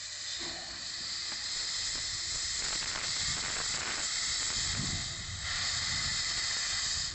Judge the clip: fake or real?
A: real